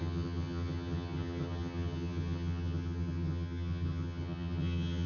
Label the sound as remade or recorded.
remade